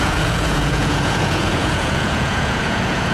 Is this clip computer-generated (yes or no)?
yes